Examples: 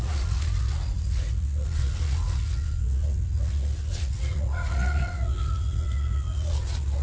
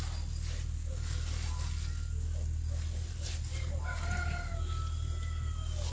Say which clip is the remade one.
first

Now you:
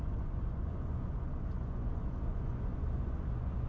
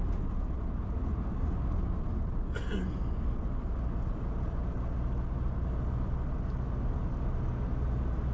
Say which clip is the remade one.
first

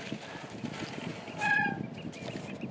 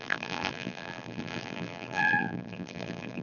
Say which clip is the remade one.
second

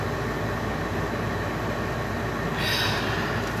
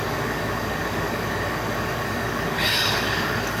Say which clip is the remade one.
second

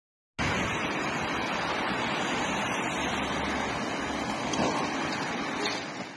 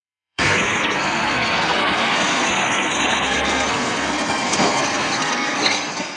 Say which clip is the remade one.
second